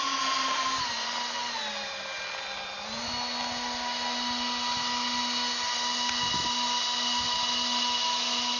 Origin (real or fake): real